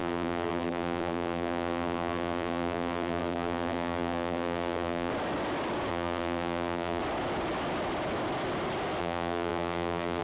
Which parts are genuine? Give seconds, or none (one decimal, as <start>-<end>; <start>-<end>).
5.1-5.9; 7.0-9.0